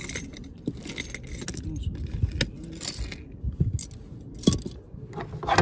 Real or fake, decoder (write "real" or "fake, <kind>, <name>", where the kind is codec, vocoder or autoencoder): real